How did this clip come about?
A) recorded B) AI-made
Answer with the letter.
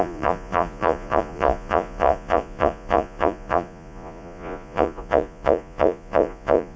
B